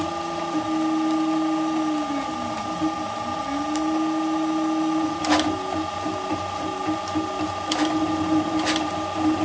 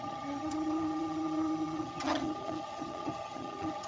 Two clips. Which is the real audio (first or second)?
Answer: first